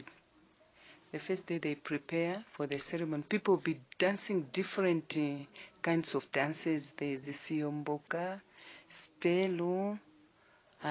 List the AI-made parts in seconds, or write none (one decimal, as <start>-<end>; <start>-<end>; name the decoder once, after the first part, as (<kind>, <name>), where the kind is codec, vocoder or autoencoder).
none